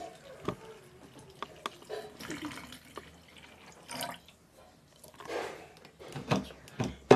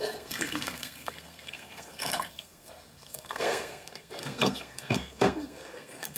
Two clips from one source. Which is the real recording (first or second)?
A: first